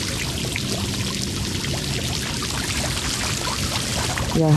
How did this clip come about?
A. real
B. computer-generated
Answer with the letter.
A